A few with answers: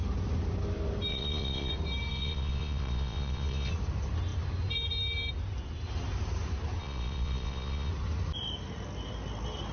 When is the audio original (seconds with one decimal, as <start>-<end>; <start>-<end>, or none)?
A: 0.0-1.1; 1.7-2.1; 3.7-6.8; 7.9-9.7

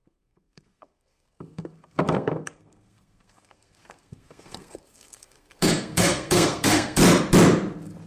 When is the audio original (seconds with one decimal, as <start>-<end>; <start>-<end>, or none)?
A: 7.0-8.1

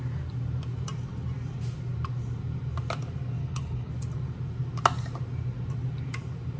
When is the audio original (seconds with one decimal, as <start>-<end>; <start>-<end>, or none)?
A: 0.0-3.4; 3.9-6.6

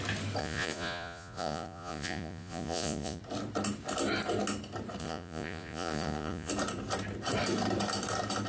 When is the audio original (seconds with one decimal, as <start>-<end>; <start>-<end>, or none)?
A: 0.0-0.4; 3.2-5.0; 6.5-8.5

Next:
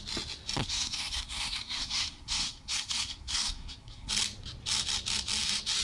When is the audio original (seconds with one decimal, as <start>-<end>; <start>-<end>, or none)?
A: 0.0-0.6; 4.1-5.8

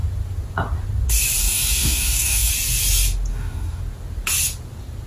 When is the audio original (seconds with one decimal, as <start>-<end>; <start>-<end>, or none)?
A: 0.0-1.4; 2.5-3.3; 3.8-5.1

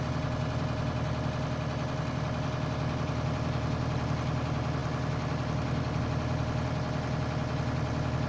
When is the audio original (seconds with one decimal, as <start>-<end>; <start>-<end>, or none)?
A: 0.0-8.3

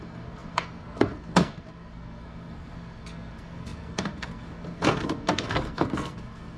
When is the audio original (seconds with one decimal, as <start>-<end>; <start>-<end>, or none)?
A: none